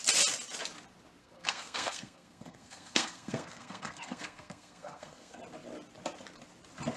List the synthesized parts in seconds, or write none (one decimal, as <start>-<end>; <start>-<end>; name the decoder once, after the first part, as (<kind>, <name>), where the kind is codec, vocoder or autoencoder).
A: 1.2-5.4 (codec, SNAC)